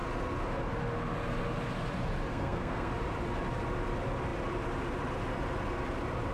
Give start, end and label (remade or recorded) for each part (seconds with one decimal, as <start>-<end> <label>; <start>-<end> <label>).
0.0-2.3 recorded; 2.3-2.9 remade; 2.9-6.3 recorded